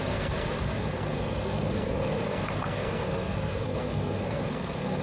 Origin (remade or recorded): remade